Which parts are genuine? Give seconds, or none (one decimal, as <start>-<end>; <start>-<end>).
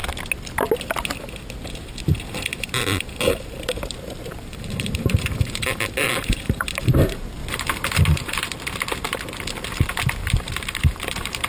0.0-2.5; 6.7-7.4; 8.0-10.2